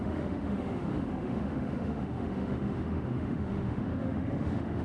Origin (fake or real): fake